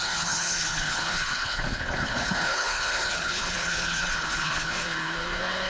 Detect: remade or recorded remade